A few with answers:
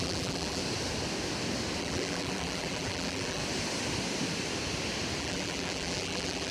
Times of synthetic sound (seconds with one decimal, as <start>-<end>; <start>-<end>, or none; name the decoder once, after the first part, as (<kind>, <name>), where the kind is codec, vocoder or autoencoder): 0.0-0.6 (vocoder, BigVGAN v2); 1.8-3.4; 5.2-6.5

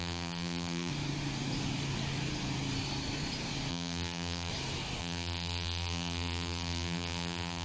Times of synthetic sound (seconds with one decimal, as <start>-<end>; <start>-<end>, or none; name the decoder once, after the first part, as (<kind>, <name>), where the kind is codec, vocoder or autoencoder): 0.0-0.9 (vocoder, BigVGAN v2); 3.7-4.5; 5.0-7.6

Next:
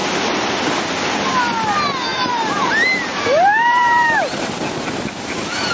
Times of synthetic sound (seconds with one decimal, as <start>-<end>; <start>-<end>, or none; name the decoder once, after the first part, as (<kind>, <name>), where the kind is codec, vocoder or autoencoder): 2.1-2.7 (vocoder, BigVGAN v2); 3.1-4.5

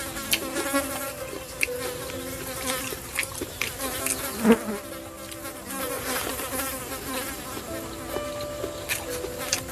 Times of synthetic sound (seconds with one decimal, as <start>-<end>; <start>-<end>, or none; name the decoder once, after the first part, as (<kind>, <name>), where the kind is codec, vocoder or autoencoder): none

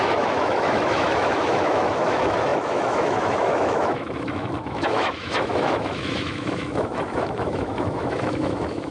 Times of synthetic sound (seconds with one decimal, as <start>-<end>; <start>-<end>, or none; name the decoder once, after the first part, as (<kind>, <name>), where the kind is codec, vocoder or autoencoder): 0.0-8.9 (autoencoder, DAC-VAE)

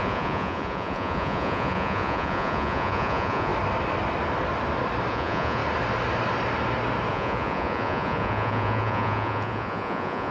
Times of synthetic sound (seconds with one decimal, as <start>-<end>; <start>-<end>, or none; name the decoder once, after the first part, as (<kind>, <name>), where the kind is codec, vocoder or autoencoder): 0.0-3.5 (vocoder, Vocos); 5.1-5.6; 7.1-10.3